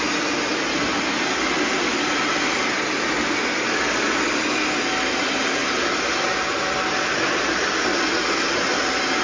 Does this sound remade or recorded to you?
recorded